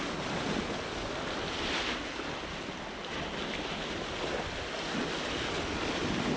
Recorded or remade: recorded